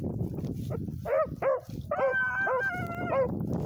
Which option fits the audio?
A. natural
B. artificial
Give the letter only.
A